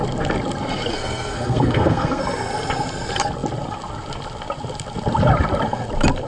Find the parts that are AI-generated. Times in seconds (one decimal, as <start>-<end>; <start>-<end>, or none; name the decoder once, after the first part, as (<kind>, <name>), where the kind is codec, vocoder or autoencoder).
0.9-2.2 (codec, SNAC)